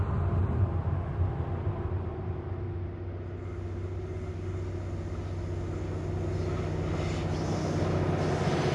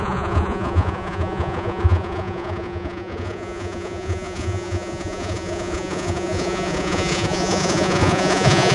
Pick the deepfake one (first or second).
second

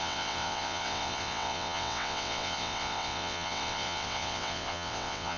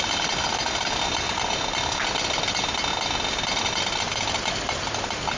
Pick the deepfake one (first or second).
first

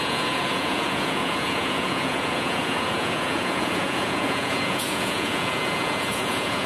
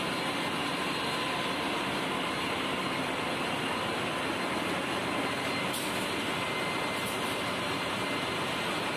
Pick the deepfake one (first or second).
first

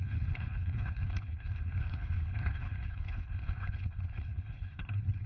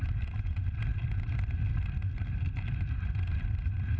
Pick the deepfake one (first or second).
first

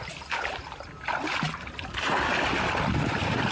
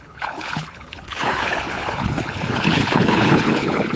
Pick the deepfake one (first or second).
second